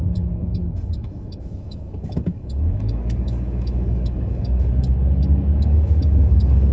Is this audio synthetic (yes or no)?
yes